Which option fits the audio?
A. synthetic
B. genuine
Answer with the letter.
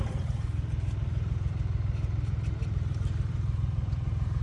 A